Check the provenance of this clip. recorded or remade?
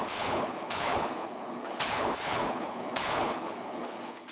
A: remade